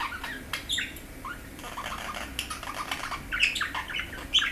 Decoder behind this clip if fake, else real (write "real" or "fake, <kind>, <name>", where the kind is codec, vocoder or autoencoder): real